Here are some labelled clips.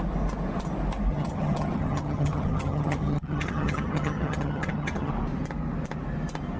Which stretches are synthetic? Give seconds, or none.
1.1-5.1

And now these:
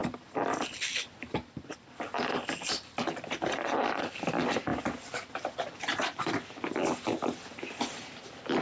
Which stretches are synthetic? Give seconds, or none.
none

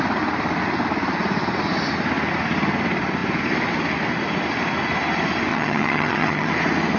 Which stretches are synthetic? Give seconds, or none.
5.5-6.5

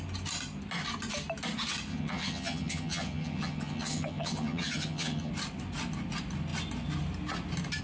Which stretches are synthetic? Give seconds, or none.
1.9-5.3